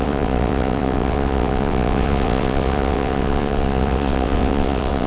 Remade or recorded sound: remade